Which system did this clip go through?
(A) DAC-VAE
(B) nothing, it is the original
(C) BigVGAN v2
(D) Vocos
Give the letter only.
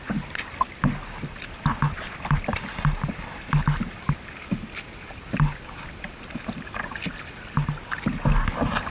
B